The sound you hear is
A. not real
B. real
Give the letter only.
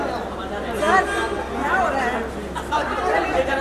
B